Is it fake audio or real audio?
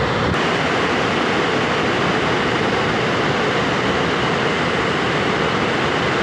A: real